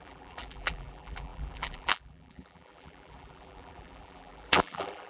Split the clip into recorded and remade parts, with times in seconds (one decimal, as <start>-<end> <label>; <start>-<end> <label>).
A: 0.0-5.1 remade